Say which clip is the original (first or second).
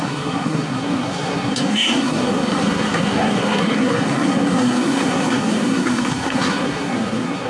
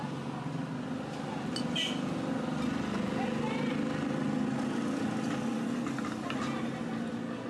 second